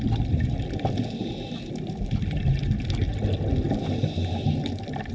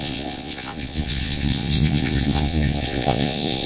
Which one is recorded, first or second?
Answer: first